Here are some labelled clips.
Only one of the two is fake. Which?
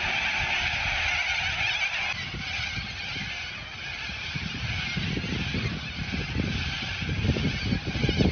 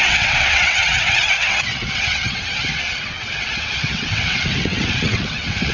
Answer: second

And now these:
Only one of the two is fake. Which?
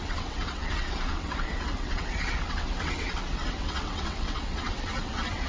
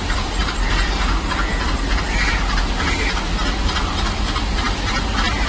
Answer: first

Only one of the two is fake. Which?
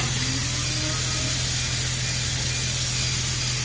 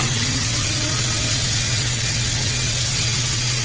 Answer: second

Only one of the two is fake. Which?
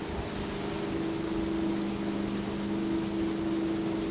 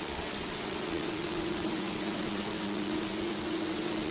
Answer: second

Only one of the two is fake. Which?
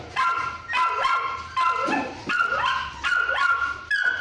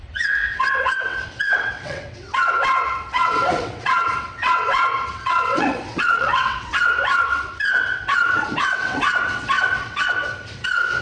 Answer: second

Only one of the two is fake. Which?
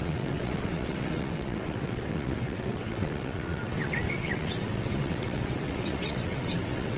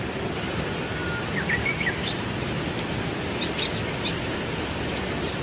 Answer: first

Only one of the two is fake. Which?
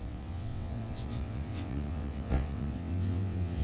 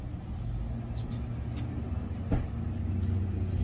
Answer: first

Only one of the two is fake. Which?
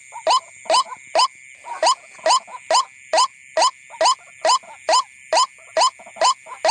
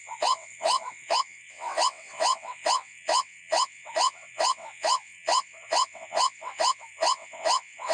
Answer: second